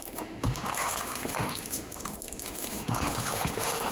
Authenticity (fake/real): fake